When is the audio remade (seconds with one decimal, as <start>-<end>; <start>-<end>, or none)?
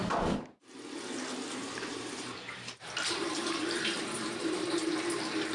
1.6-4.9